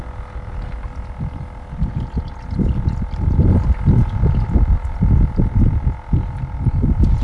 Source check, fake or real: real